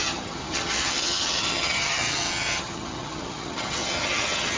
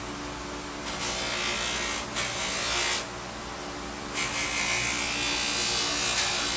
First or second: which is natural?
second